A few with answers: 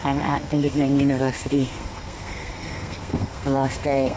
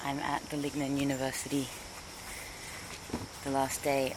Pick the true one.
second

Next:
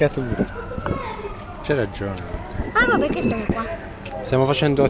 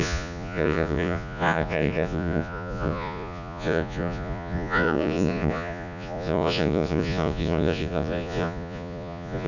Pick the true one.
first